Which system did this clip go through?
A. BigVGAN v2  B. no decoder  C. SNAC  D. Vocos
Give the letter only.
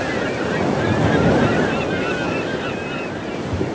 B